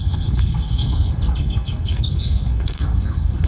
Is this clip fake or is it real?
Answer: fake